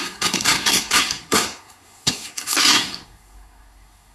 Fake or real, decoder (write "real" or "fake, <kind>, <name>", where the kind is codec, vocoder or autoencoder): fake, codec, SNAC